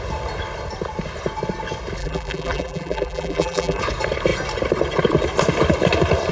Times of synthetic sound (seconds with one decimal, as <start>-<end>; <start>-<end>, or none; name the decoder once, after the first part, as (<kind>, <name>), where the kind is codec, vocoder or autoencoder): 2.0-3.8 (vocoder, BigVGAN v2)